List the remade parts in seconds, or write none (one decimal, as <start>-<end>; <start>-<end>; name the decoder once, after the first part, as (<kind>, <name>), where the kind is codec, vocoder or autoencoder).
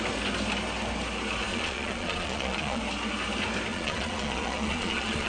1.5-2.8 (vocoder, Vocos); 3.7-5.3